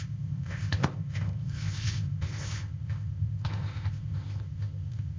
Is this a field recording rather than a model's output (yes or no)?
no